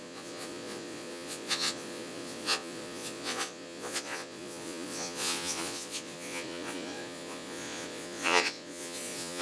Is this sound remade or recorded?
remade